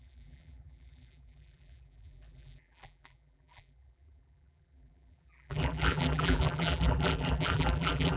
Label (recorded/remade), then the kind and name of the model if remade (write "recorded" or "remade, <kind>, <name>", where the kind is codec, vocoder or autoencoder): remade, vocoder, BigVGAN v2